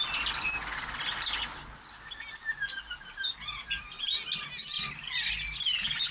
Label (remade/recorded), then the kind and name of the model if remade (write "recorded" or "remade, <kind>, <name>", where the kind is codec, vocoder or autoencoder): recorded